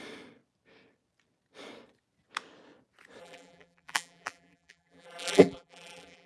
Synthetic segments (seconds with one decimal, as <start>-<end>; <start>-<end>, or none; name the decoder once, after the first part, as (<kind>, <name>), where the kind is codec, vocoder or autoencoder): 3.2-6.3 (vocoder, BigVGAN v2)